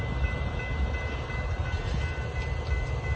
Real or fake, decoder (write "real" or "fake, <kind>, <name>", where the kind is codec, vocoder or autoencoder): real